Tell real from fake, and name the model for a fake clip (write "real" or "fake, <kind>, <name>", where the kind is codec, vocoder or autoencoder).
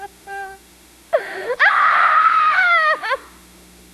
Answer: fake, autoencoder, DAC-VAE